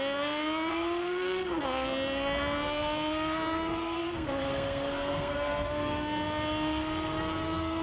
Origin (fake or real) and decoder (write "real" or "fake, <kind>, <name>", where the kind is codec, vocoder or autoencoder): fake, codec, SNAC